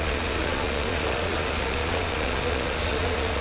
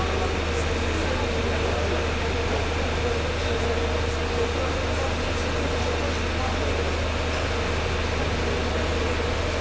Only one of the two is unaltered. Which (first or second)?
second